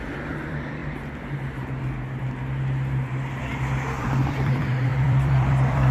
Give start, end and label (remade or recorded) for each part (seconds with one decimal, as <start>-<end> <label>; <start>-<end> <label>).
0.0-0.8 remade; 0.8-4.3 recorded; 4.3-5.9 remade